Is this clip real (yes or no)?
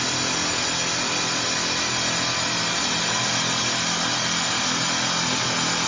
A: yes